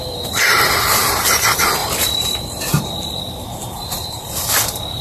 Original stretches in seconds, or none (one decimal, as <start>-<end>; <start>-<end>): 0.0-0.5; 1.1-1.8